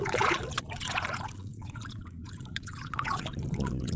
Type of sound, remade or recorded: remade